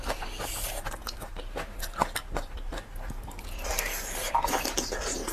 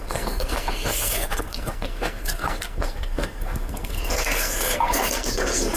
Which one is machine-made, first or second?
second